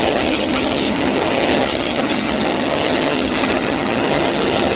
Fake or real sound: fake